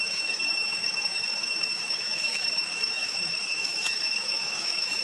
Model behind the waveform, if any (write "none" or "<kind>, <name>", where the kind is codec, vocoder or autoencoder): autoencoder, DAC-VAE